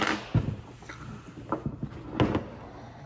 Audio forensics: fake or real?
real